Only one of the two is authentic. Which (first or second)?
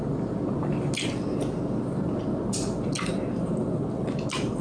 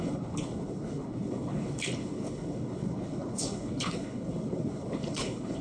first